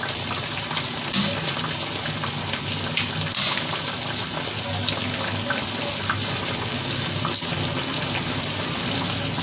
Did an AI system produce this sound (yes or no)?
no